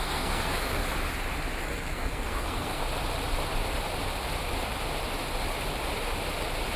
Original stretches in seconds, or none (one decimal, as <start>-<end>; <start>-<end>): 0.8-1.6; 2.8-6.8

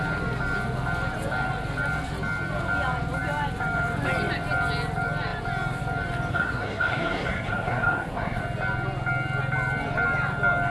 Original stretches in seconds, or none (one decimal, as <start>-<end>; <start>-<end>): 0.0-6.3; 8.4-10.7

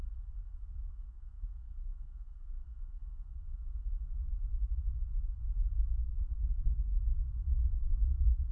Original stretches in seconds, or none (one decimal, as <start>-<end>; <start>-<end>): 0.0-0.9; 3.9-6.0; 7.0-7.7

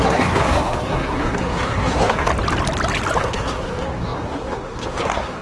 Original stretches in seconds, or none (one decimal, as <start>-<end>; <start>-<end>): 2.3-3.2

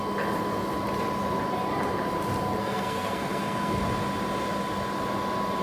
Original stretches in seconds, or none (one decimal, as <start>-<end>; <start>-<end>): 0.0-2.6; 3.8-5.6

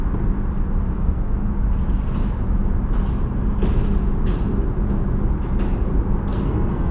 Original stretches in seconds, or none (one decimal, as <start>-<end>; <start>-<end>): 0.0-0.9; 1.5-6.3

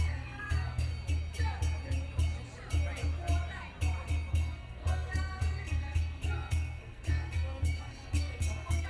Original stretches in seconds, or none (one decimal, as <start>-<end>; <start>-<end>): 0.9-4.3